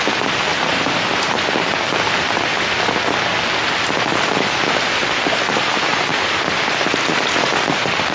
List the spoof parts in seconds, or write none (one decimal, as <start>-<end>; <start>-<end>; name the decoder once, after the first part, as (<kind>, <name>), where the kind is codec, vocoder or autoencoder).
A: none